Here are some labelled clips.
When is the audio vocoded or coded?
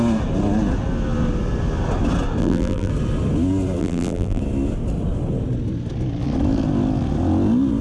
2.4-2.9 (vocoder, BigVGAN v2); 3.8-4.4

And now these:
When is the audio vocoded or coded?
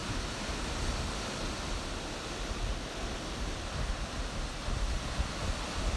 none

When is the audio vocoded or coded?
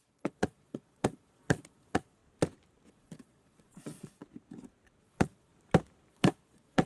0.0-2.2 (vocoder, Vocos); 2.9-4.2; 5.0-5.5; 6.1-6.9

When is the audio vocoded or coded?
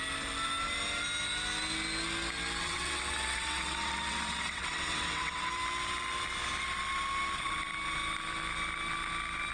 2.6-5.5 (vocoder, WaveNeXt)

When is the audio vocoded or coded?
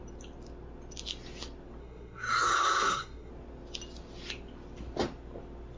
1.8-3.3 (codec, SNAC)